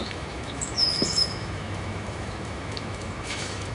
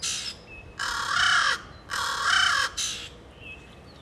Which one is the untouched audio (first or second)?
second